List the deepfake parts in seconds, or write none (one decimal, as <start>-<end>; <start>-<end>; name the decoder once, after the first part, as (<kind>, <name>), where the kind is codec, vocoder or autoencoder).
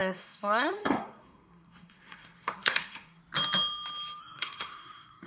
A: 0.0-3.2 (codec, SNAC); 4.2-5.3